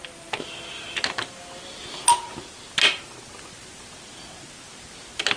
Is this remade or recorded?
recorded